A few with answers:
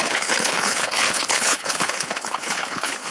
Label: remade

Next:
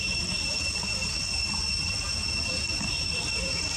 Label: recorded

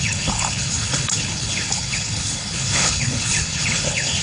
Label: remade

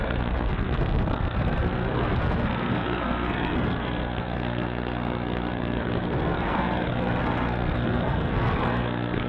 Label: remade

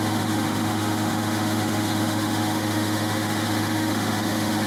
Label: remade